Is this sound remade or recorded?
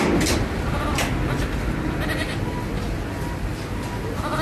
recorded